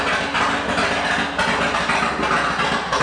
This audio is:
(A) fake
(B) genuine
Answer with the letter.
B